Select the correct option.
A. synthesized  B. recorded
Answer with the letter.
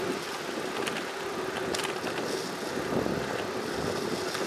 B